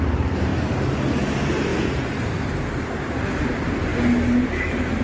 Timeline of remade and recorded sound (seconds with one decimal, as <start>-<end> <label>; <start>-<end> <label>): 0.0-0.5 remade; 0.5-1.1 recorded; 1.1-3.9 remade; 3.9-4.4 recorded; 4.4-5.0 remade